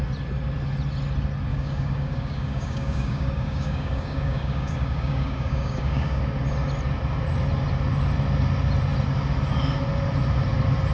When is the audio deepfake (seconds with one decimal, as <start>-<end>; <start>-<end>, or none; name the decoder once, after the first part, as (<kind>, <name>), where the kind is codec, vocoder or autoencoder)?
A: 1.5-6.2 (codec, DAC)